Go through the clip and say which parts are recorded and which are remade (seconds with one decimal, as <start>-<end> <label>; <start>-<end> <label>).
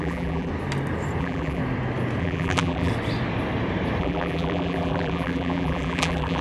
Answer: 0.0-0.5 remade; 0.5-1.2 recorded; 1.2-1.6 remade; 1.6-2.2 recorded; 2.2-2.9 remade; 2.9-4.0 recorded; 4.0-6.4 remade